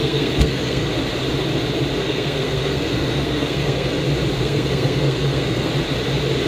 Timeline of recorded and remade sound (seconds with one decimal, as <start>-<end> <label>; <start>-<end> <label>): 0.0-0.9 remade; 0.9-2.0 recorded; 2.0-3.9 remade; 3.9-4.4 recorded; 4.4-5.7 remade; 5.7-6.5 recorded

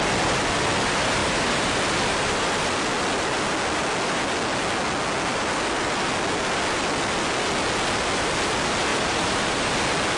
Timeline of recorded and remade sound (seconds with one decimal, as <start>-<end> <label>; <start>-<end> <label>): 0.0-1.2 recorded; 1.2-1.8 remade; 1.8-8.9 recorded; 8.9-9.7 remade; 9.7-10.2 recorded

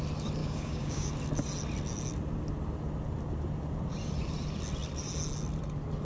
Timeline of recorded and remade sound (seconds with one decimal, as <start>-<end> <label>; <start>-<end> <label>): 0.0-0.4 recorded; 0.4-1.1 remade; 1.1-6.0 recorded

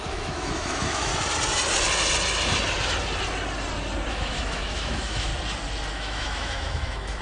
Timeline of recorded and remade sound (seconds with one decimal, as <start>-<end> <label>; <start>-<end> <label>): 0.0-1.1 remade; 1.1-4.1 recorded; 4.1-5.3 remade; 5.3-5.9 recorded; 5.9-7.2 remade

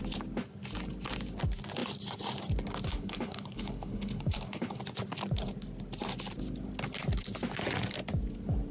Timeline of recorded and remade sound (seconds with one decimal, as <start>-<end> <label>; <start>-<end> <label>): 0.0-2.9 recorded; 2.9-4.8 remade; 4.8-8.7 recorded